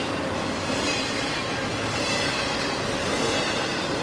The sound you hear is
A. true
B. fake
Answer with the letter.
A